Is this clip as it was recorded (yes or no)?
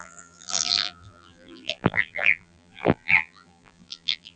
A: no